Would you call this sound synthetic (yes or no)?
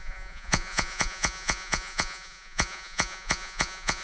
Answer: yes